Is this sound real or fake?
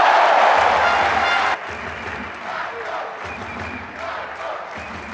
real